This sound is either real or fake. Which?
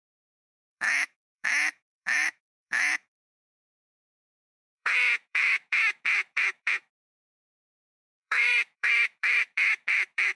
fake